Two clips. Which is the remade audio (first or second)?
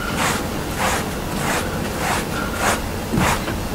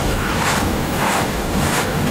second